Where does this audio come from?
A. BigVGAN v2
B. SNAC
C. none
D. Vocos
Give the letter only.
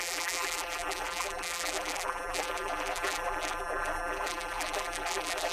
A